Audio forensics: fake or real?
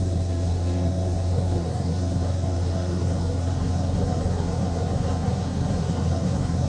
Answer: fake